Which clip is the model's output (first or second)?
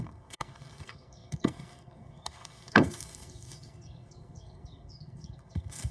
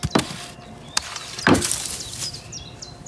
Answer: first